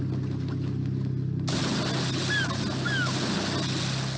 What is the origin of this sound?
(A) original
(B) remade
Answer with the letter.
A